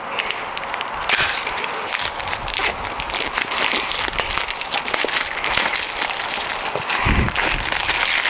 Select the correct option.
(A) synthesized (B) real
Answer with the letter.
B